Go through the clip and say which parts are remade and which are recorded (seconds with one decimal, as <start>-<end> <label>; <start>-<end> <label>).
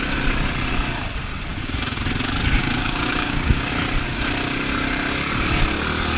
0.0-1.5 recorded; 1.5-2.0 remade; 2.0-2.6 recorded; 2.6-3.7 remade; 3.7-6.2 recorded